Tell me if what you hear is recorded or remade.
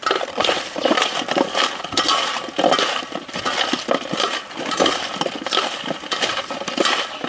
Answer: recorded